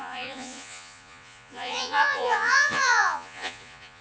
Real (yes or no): no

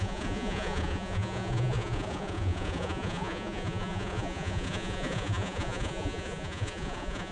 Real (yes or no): no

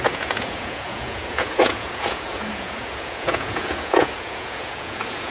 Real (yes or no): no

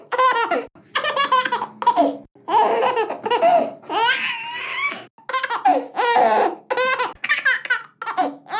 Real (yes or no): yes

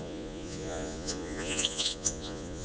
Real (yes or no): no